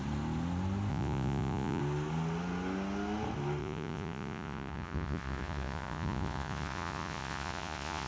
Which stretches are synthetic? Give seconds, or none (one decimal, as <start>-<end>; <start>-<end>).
0.9-1.8; 3.6-8.1